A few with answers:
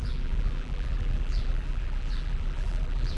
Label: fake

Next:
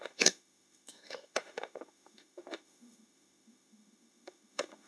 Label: fake